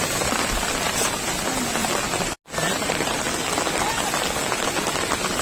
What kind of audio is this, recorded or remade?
recorded